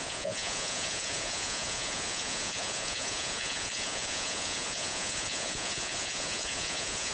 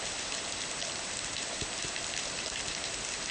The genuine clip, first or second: second